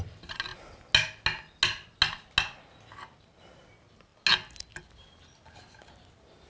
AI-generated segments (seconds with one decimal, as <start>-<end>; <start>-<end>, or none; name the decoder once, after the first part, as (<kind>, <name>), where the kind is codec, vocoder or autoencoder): none